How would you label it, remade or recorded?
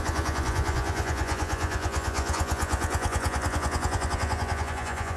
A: remade